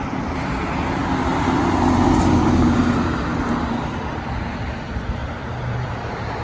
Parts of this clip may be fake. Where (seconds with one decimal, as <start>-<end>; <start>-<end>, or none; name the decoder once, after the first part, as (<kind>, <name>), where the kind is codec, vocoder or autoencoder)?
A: 5.2-5.9 (vocoder, BigVGAN v2)